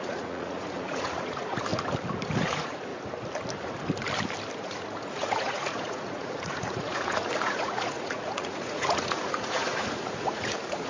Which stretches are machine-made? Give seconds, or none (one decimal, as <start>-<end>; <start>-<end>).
0.0-1.7; 2.3-2.9; 4.6-10.9